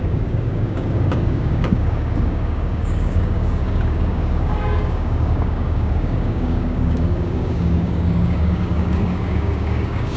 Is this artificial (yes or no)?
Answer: yes